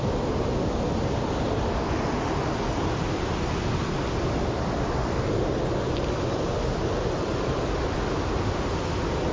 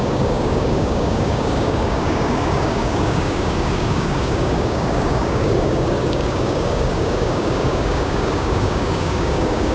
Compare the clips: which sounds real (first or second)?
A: first